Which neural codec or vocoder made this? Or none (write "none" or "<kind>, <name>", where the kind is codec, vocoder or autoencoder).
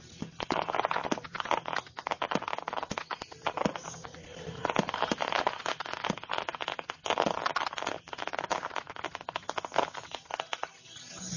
none